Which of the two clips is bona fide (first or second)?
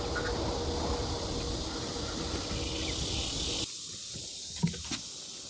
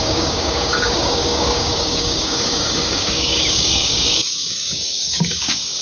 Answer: first